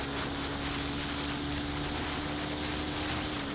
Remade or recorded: recorded